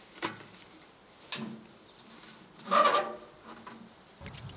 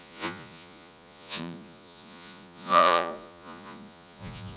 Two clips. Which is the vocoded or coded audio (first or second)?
second